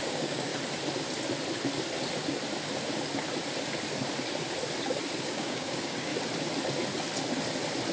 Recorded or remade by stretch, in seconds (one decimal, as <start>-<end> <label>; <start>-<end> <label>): 0.0-0.5 remade; 0.5-5.2 recorded; 5.2-6.1 remade; 6.1-7.9 recorded